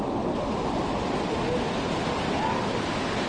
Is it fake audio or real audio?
real